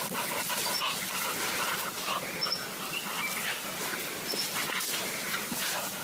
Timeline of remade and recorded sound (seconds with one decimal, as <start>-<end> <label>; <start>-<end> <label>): 0.0-6.0 recorded